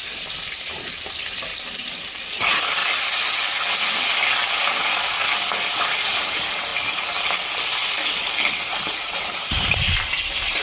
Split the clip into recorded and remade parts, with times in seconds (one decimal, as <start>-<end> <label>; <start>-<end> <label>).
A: 0.0-2.8 remade; 2.8-6.1 recorded; 6.1-6.7 remade; 6.7-8.8 recorded; 8.8-10.6 remade